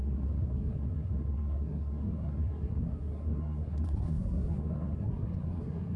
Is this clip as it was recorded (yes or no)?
no